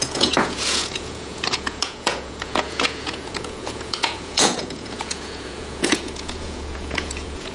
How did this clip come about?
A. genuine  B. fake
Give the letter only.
B